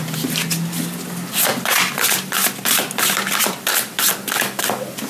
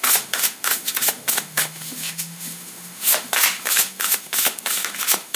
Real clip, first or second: first